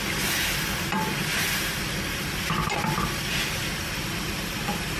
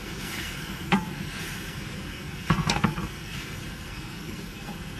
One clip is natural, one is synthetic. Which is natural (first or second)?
first